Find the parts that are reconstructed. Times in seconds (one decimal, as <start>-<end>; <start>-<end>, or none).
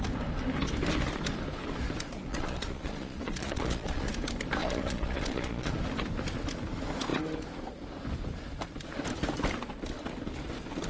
2.3-4.1; 4.6-5.7